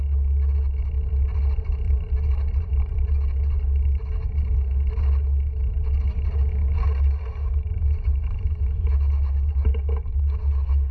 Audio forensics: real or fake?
real